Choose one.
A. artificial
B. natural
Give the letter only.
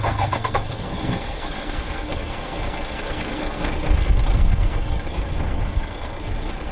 A